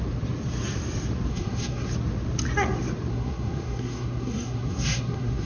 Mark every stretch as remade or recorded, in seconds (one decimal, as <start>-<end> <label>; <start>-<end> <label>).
0.0-1.3 recorded; 1.3-1.9 remade; 1.9-3.1 recorded; 3.1-5.5 remade